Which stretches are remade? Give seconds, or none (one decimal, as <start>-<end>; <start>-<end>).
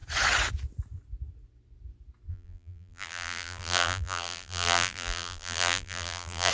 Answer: 2.3-6.5